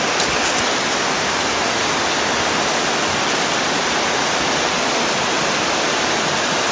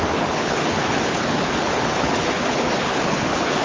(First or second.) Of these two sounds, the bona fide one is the first